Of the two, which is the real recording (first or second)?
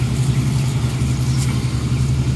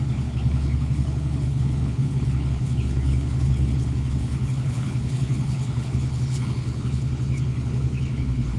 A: first